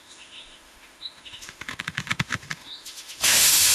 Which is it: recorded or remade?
remade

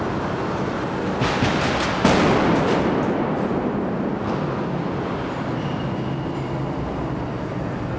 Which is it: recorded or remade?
recorded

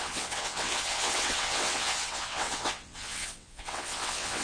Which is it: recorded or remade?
remade